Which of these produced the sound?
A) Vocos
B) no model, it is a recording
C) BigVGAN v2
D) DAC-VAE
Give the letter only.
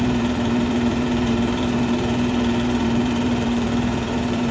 C